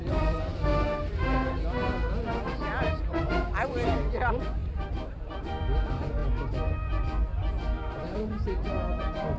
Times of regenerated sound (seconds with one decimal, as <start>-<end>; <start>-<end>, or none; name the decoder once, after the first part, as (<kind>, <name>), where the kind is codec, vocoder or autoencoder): 0.0-0.7 (vocoder, BigVGAN v2); 3.1-9.4